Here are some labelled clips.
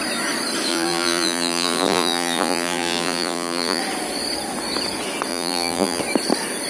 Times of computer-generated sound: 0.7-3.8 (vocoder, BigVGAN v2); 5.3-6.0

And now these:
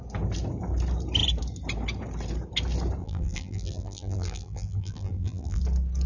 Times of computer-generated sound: 3.0-5.6 (vocoder, BigVGAN v2)

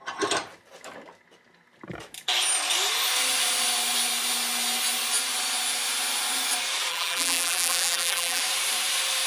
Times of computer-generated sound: 6.9-8.4 (vocoder, BigVGAN v2)

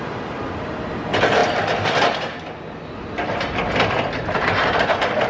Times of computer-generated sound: none

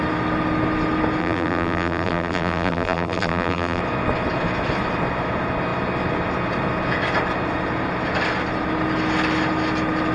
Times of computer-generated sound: 1.2-3.8 (vocoder, BigVGAN v2)

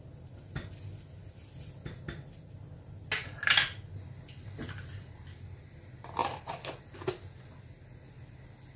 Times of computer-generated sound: none

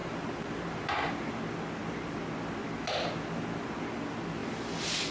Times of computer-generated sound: 0.0-1.3 (vocoder, BigVGAN v2); 4.4-5.1

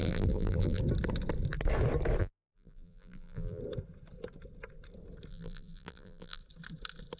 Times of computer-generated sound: 0.0-0.8 (vocoder, BigVGAN v2); 2.2-3.6; 5.3-6.4